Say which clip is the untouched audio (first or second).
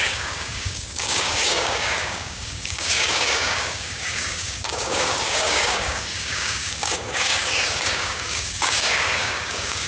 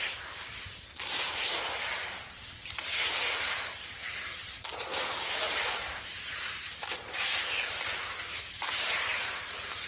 second